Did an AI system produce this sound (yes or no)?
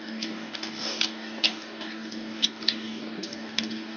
yes